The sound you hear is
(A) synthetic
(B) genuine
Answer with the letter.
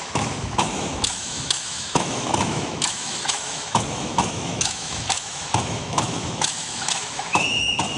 A